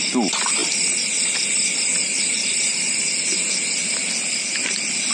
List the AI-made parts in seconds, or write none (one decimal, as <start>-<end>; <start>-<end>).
none